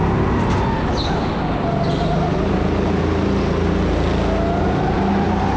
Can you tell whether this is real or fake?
real